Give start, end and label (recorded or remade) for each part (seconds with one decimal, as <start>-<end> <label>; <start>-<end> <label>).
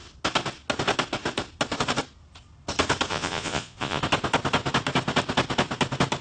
0.0-3.1 recorded; 3.1-4.0 remade; 4.0-6.2 recorded